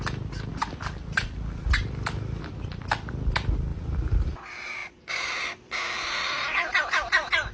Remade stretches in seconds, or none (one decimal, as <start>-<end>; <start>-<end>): 0.5-3.1; 3.7-4.3; 4.8-6.4